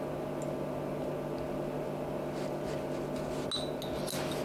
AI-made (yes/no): no